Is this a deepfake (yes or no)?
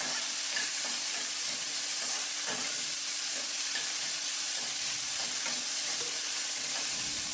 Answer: yes